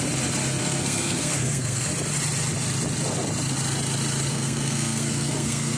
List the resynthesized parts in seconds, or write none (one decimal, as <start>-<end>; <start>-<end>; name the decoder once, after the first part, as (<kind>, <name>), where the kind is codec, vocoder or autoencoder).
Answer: 0.6-1.9 (codec, SNAC); 4.3-5.8